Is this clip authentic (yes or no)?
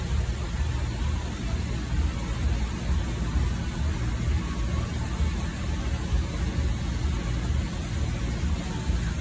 yes